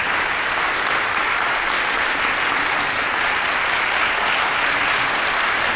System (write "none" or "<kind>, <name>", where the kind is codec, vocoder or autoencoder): none